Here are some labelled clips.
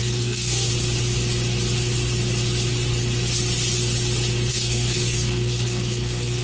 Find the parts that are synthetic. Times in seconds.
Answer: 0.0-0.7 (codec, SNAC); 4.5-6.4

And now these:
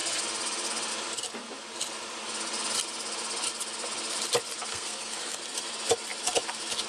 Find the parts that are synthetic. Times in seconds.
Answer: 4.7-5.4 (codec, SNAC)

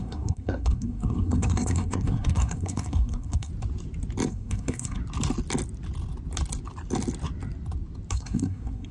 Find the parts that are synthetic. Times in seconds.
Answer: 0.0-3.5 (codec, SNAC); 4.3-5.0; 8.1-8.9

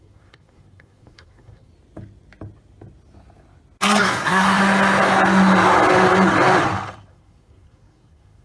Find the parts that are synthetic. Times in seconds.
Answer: 0.0-1.7 (codec, SNAC); 4.0-4.6; 7.1-8.4

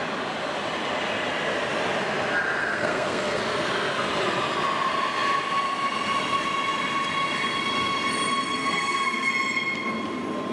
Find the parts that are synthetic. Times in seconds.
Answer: 2.6-3.4 (codec, SNAC); 8.6-9.3